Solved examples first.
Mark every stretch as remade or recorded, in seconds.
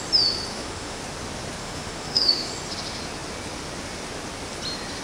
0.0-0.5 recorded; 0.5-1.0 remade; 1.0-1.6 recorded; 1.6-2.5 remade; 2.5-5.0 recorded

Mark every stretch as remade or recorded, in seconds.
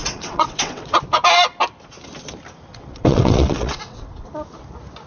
0.0-1.0 remade; 1.0-2.7 recorded; 2.7-4.3 remade; 4.3-5.1 recorded